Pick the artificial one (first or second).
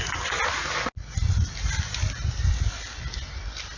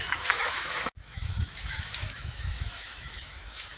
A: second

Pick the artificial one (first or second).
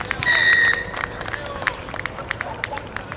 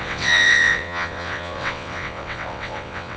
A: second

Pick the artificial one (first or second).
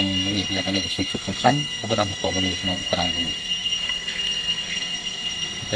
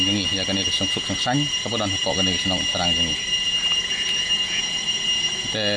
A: first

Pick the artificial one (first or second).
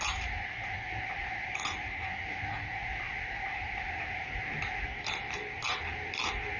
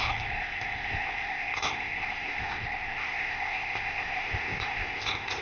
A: second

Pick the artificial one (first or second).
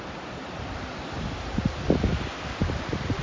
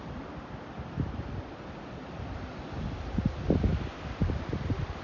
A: first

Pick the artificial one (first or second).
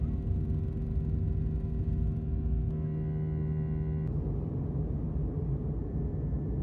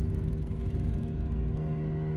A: second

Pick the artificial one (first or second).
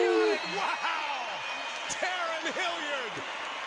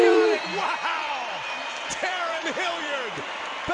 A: second